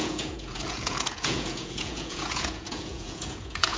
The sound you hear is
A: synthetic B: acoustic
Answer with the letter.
A